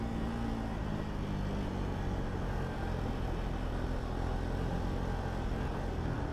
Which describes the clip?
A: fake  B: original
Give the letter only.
B